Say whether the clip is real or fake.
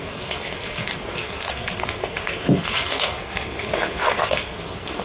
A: fake